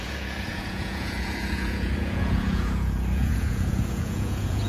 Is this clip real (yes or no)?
no